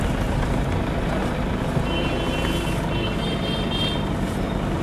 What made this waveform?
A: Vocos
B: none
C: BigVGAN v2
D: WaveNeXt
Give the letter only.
B